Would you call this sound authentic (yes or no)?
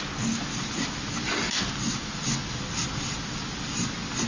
yes